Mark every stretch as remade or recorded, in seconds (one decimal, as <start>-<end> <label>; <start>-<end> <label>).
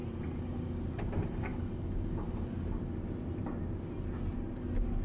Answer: 0.0-5.0 recorded